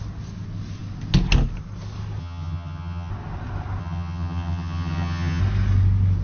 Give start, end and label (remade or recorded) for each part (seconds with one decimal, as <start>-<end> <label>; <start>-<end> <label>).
0.0-2.2 recorded; 2.2-3.1 remade; 3.1-3.8 recorded; 3.8-5.4 remade; 5.4-6.2 recorded

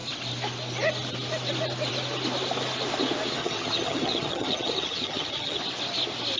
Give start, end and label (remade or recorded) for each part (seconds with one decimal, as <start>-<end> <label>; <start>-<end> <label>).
0.0-3.4 recorded; 3.4-5.6 remade; 5.6-6.4 recorded

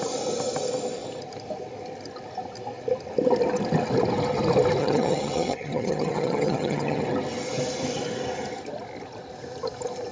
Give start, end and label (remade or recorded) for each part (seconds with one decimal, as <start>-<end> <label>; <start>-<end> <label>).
0.0-4.8 recorded; 4.8-7.0 remade; 7.0-10.1 recorded

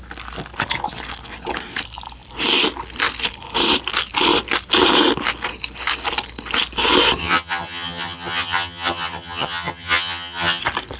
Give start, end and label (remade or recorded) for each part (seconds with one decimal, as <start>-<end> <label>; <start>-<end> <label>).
0.0-7.2 recorded; 7.2-10.6 remade; 10.6-11.0 recorded